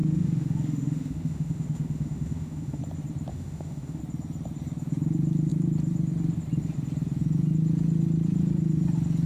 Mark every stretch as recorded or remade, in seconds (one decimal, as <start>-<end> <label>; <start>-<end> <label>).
0.0-2.8 remade; 2.8-3.3 recorded; 3.3-4.0 remade; 4.0-9.3 recorded